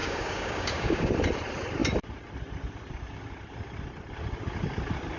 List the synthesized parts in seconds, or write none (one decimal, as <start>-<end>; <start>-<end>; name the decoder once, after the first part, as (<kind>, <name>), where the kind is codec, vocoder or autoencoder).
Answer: 0.0-1.1 (codec, DAC)